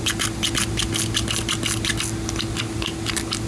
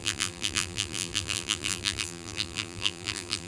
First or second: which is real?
first